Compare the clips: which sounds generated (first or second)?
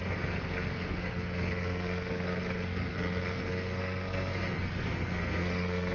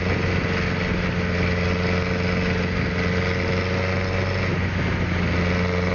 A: first